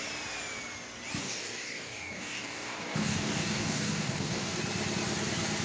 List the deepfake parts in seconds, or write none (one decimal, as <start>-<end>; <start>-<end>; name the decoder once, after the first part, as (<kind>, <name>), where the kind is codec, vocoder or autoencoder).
1.2-4.6 (codec, DAC)